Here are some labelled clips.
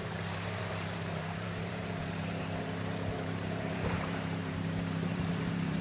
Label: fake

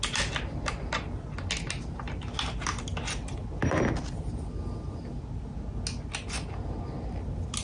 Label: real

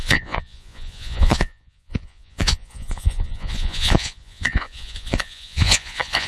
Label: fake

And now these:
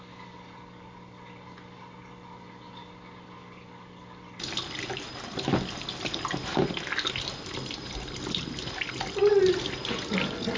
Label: real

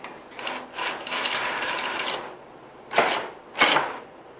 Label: real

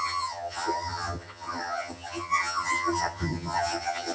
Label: fake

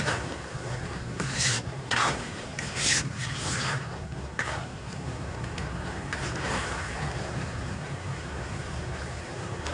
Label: fake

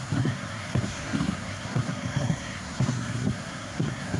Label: fake